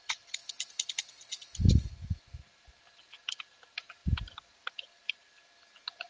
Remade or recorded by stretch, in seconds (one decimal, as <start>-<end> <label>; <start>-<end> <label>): 0.0-6.1 recorded